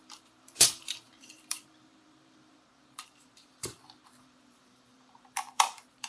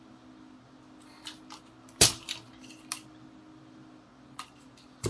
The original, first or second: second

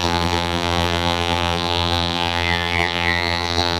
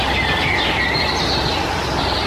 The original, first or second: second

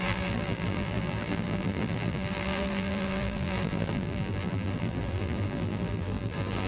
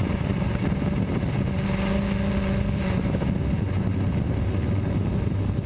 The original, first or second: second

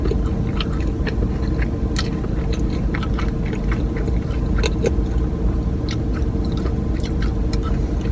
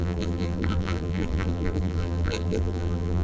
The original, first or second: first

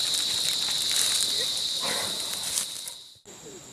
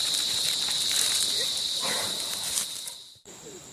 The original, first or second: first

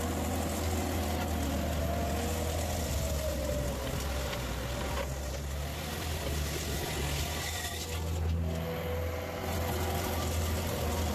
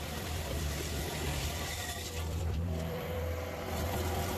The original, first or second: first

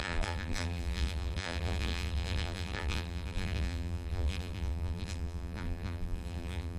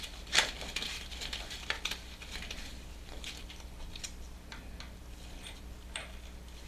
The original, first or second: second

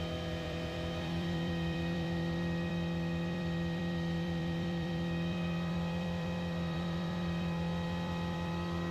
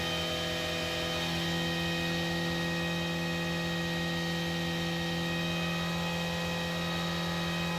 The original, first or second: second